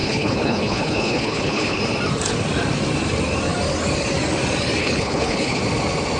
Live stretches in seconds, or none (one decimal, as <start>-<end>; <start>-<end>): 1.8-4.8; 5.6-6.2